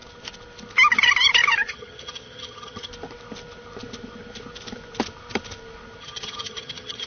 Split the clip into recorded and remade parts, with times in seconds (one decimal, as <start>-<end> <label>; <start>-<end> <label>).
0.0-1.7 recorded; 1.7-2.9 remade; 2.9-6.0 recorded; 6.0-7.1 remade